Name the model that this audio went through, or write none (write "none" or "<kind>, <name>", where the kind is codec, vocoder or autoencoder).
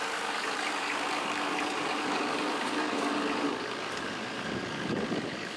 codec, DAC